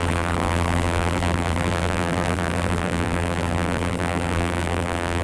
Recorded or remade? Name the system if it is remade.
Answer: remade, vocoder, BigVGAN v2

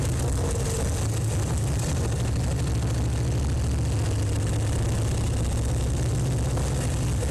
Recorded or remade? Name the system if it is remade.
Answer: recorded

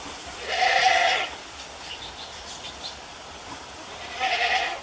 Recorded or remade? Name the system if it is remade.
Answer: remade, vocoder, BigVGAN v2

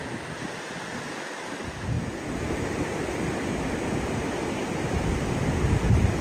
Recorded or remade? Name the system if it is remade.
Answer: recorded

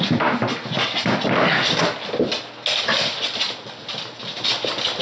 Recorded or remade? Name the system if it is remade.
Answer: recorded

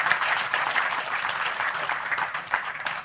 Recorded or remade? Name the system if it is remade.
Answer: remade, vocoder, BigVGAN v2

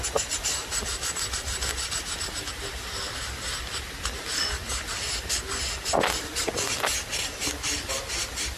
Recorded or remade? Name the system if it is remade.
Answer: recorded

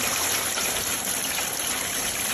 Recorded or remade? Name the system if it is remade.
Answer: remade, vocoder, BigVGAN v2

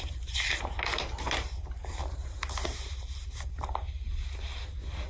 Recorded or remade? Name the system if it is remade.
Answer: remade, vocoder, BigVGAN v2